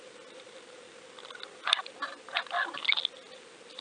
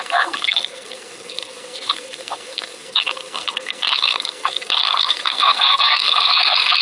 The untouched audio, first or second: first